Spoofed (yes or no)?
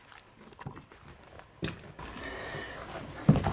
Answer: no